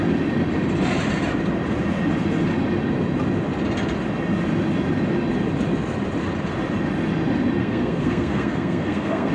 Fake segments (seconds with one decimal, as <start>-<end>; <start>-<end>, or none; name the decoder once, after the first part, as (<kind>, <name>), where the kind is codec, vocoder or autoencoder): 7.6-9.3 (codec, SNAC)